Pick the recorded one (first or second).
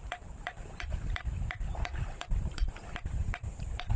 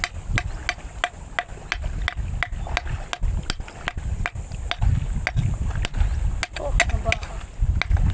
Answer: second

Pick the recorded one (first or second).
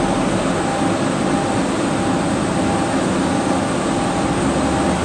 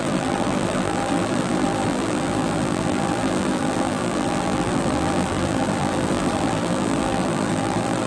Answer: first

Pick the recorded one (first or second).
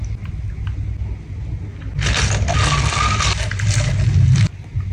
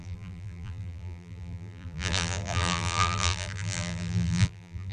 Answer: first